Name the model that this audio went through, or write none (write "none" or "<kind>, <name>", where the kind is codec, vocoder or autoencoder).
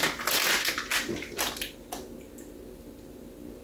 none